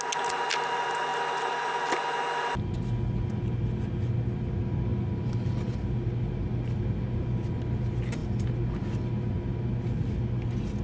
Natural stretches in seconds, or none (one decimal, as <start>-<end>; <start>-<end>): 0.0-4.9; 7.6-10.8